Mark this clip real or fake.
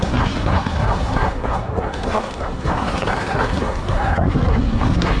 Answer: fake